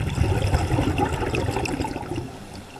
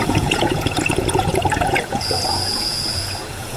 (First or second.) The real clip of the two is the first